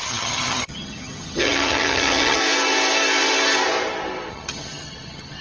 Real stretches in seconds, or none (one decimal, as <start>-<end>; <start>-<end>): 2.4-4.3